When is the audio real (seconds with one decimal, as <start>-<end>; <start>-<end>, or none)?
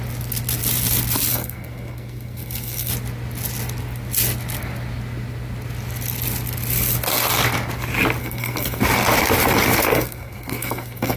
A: 0.0-1.3; 2.9-8.2; 8.8-9.9